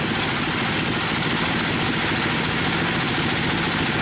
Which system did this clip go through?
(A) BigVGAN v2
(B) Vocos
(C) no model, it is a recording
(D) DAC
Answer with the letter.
C